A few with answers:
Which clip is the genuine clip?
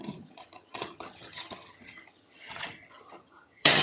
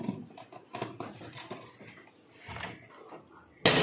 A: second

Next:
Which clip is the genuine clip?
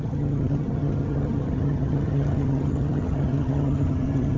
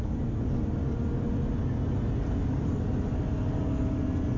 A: second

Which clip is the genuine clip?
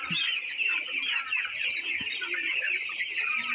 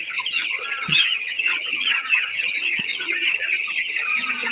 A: first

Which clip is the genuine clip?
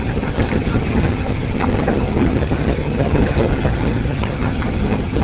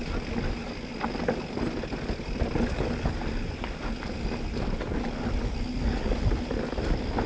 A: second